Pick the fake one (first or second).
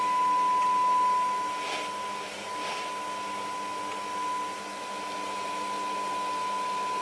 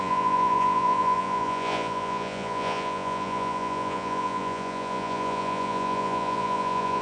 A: second